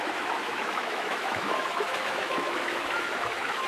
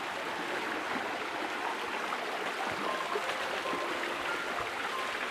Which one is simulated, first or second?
first